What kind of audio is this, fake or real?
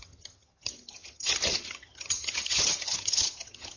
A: fake